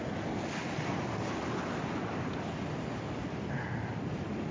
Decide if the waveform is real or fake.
real